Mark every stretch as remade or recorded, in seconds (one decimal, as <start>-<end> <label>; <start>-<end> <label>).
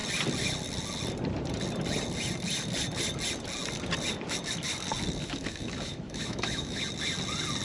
0.0-5.2 recorded; 5.2-6.8 remade; 6.8-7.6 recorded